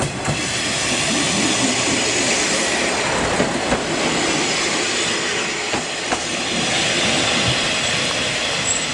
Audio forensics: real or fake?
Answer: real